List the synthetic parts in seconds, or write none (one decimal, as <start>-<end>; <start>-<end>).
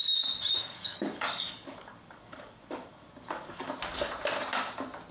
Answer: 0.6-3.7